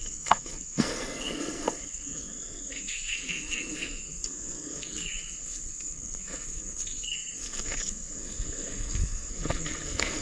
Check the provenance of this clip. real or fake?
fake